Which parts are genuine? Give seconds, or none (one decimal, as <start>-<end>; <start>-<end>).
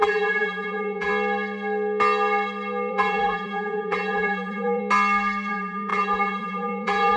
1.1-2.9; 4.8-5.5